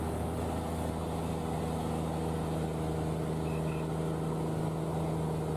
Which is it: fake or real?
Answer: real